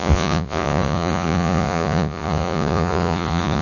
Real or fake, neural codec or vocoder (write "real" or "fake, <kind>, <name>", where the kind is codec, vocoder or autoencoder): fake, vocoder, Vocos